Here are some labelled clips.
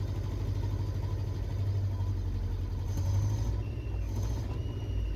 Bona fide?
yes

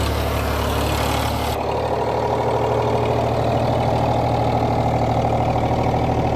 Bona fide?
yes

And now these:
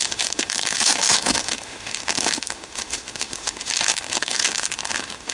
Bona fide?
no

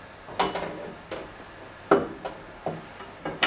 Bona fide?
yes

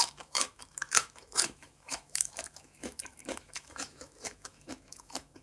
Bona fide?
no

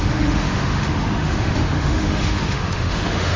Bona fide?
no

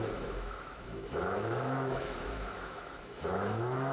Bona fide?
no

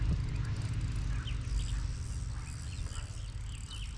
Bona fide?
yes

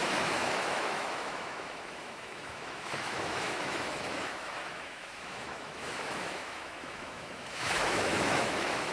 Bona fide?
no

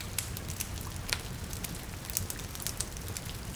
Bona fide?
yes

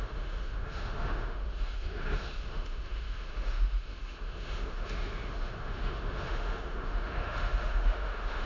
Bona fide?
no